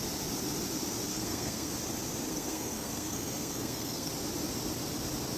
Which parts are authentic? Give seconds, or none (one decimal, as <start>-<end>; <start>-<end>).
0.0-1.1; 1.7-2.3; 4.1-5.4